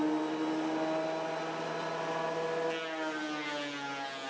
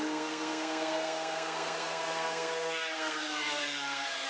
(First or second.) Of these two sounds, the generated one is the second